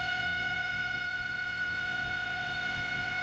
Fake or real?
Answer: fake